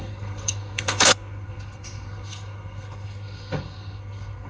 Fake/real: fake